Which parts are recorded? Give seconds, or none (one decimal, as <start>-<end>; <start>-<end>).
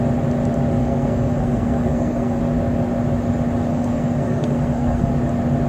0.0-0.8; 2.4-3.7; 5.1-5.7